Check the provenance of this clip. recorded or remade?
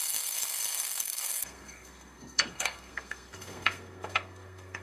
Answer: remade